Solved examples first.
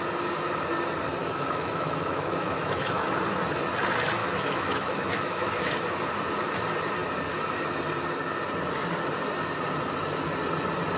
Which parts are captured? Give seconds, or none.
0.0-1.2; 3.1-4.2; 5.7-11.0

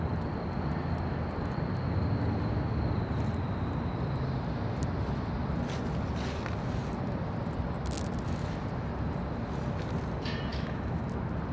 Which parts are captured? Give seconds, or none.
0.0-10.5; 11.0-11.5

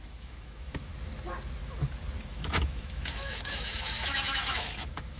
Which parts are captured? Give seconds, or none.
0.9-2.3

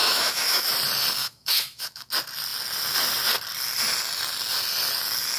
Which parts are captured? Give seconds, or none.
0.7-1.2; 2.1-5.4

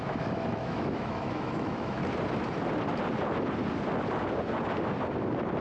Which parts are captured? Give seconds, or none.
2.0-5.6

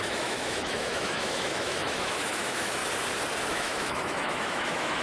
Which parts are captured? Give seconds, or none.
2.8-3.5